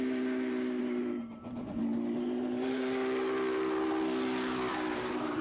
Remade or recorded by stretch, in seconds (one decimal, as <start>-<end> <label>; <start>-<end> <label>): 0.0-0.8 recorded; 0.8-2.8 remade; 2.8-4.7 recorded; 4.7-5.4 remade